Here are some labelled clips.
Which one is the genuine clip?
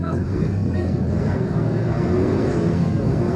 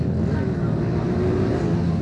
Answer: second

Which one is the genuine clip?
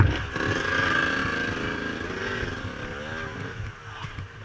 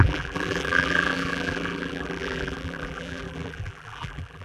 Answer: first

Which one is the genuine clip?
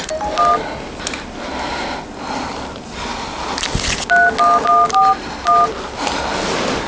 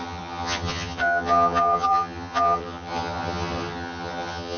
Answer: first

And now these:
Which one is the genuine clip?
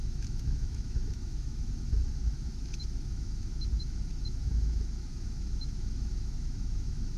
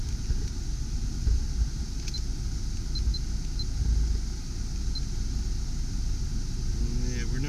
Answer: second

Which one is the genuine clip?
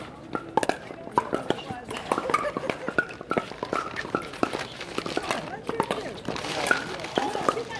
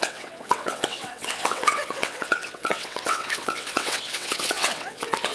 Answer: first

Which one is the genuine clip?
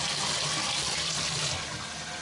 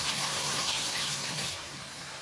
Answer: first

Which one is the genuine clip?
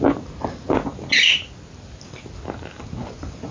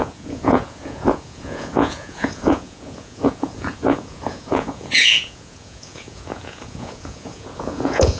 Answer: first